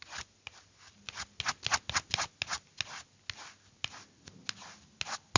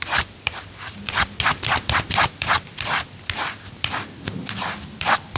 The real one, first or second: first